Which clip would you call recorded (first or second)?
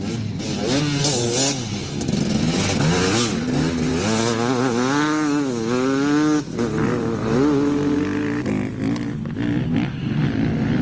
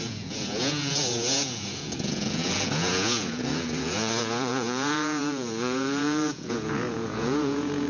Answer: first